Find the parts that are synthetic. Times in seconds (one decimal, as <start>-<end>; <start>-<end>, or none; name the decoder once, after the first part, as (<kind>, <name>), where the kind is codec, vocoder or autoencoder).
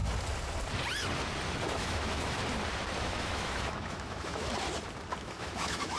1.7-2.4 (autoencoder, DAC-VAE); 3.0-4.5; 5.2-6.0